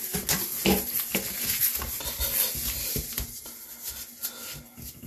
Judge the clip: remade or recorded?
recorded